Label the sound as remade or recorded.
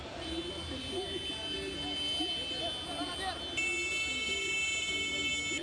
recorded